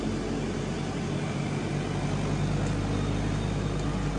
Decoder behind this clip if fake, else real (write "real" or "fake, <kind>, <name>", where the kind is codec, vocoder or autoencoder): real